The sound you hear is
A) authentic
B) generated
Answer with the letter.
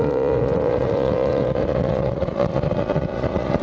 B